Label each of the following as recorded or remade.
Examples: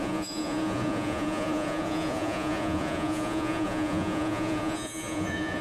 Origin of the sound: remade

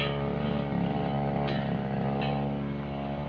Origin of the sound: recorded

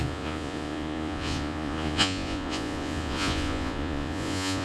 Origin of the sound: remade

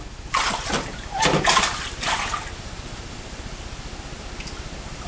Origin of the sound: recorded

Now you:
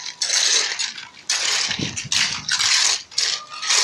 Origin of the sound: recorded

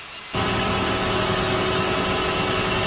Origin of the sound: recorded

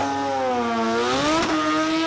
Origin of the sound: recorded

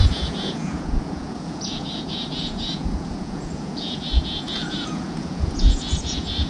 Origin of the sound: remade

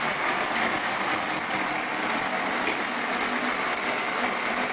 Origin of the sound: recorded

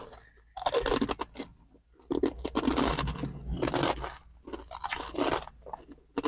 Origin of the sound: recorded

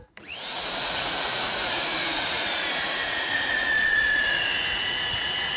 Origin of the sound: remade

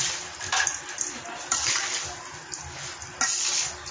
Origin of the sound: recorded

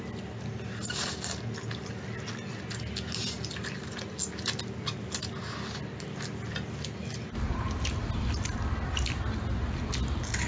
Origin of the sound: recorded